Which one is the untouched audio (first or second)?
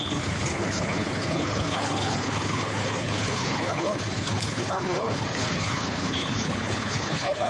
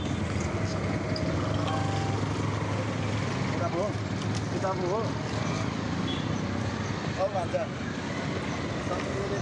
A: second